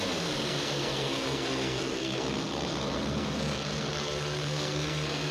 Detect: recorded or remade remade